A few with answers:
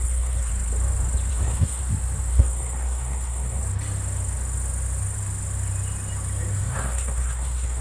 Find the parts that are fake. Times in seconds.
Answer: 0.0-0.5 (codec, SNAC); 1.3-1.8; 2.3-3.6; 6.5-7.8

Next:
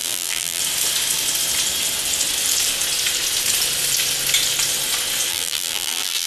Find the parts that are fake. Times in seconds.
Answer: 0.0-0.6 (vocoder, BigVGAN v2); 5.3-6.3

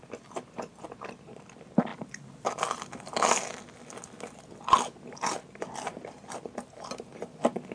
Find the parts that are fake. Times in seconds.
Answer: 1.9-6.5 (vocoder, BigVGAN v2)